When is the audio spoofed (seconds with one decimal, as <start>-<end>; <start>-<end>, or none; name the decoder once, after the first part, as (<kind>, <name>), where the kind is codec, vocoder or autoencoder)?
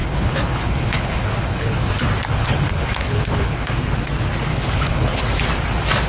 0.0-1.9 (codec, HILCodec); 2.3-3.7; 4.5-5.2